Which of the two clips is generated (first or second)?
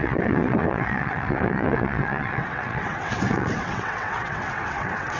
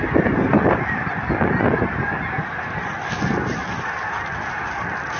first